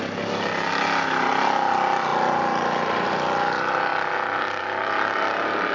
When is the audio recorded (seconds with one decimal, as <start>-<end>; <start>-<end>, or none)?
0.0-5.7

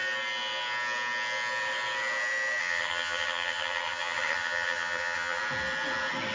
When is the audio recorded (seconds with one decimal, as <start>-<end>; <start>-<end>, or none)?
0.0-2.6; 5.4-6.3

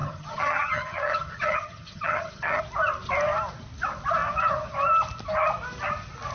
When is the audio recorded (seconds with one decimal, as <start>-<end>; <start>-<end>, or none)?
2.6-6.3